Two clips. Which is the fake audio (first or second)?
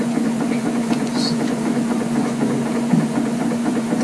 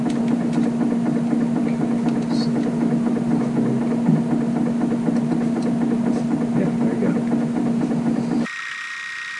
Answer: first